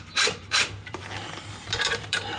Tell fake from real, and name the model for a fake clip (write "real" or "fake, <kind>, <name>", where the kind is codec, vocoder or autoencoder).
fake, vocoder, BigVGAN v2